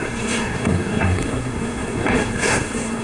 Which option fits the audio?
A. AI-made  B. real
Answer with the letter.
A